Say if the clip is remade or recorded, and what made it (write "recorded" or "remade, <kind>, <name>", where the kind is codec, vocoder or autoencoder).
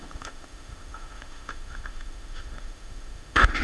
remade, autoencoder, DAC-VAE